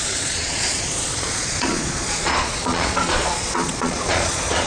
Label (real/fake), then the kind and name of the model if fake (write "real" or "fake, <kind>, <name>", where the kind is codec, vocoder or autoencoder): fake, vocoder, Vocos